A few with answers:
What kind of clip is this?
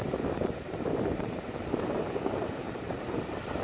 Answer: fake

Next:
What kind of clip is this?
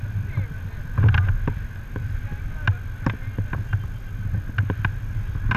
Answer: real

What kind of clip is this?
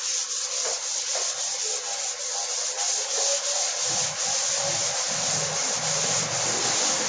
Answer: fake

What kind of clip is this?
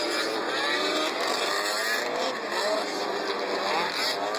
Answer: real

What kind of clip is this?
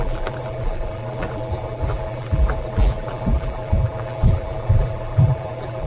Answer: fake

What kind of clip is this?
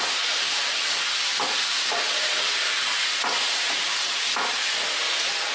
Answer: real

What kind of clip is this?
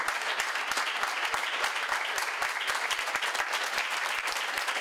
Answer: real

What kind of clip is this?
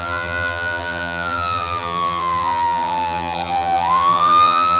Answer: fake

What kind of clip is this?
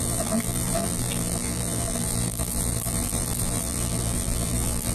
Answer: fake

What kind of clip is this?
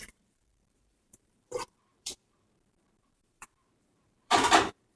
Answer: fake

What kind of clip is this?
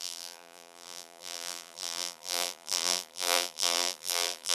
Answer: fake